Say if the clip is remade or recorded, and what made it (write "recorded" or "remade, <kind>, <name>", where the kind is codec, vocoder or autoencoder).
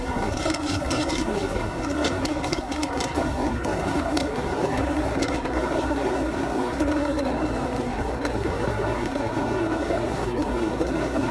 remade, codec, SNAC